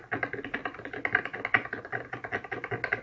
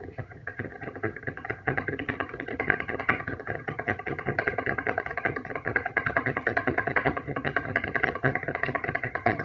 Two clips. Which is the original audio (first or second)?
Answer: first